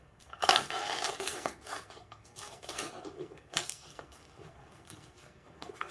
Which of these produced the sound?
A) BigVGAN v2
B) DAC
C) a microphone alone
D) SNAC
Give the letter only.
D